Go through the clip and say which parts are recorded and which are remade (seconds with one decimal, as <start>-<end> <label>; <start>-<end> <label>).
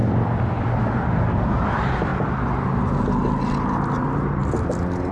0.0-0.8 recorded; 0.8-2.1 remade; 2.1-4.0 recorded; 4.0-4.4 remade; 4.4-5.1 recorded